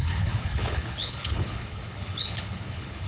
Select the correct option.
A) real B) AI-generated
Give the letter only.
B